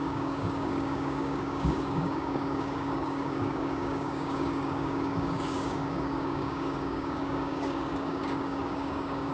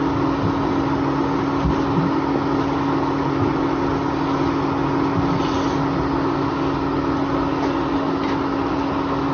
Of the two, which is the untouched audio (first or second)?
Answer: second